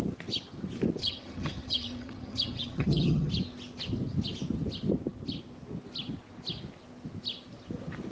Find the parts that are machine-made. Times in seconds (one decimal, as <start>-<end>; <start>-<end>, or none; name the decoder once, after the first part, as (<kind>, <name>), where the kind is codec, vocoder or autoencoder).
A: 1.0-3.3 (vocoder, HiFi-GAN)